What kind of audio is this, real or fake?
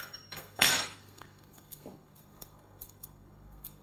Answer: fake